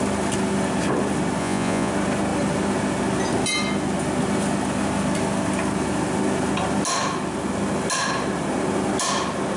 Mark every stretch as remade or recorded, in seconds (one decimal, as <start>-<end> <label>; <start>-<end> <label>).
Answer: 0.0-1.4 recorded; 1.4-1.9 remade; 1.9-9.6 recorded